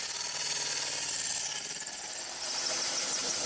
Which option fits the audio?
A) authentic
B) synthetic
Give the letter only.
A